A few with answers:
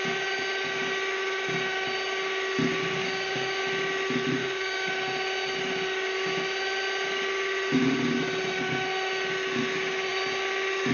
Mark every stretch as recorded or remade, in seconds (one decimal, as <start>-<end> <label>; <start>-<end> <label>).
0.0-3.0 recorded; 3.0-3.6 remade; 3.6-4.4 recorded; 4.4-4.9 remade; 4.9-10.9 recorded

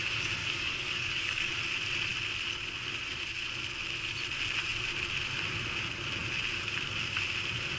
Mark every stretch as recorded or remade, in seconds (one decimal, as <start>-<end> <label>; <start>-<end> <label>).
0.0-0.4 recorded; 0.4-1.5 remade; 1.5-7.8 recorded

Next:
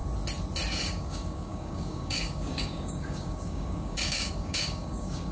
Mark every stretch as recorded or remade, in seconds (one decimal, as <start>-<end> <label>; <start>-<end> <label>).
0.0-0.7 recorded; 0.7-5.3 remade

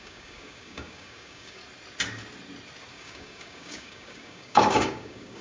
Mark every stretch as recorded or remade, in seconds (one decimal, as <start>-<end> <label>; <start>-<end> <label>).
0.0-1.6 remade; 1.6-2.9 recorded; 2.9-5.4 remade